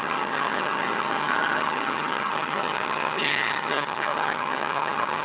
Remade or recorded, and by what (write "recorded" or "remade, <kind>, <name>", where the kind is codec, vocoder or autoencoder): remade, vocoder, HiFi-GAN